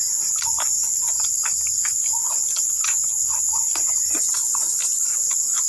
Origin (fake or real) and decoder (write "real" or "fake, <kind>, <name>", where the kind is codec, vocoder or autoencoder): real